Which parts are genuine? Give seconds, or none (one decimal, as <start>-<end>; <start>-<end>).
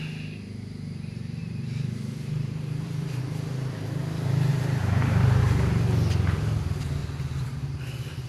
0.0-1.4; 3.2-4.5; 5.4-7.0; 7.8-8.3